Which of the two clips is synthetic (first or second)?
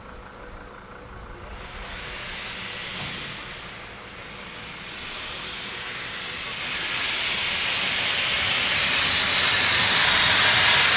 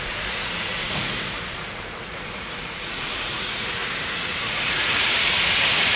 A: second